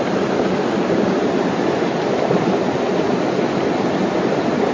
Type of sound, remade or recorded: recorded